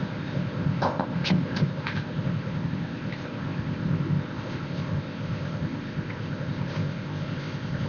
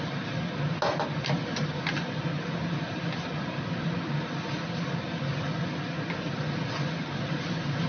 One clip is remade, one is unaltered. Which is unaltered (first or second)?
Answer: second